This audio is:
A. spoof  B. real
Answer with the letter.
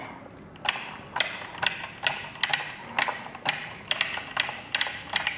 B